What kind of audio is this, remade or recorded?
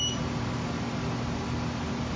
recorded